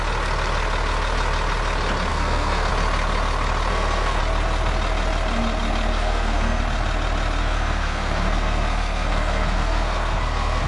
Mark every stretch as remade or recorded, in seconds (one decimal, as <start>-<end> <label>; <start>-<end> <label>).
0.0-2.1 recorded; 2.1-2.7 remade; 2.7-3.7 recorded; 3.7-4.2 remade; 4.2-5.9 recorded; 5.9-6.6 remade; 6.6-7.4 recorded; 7.4-10.7 remade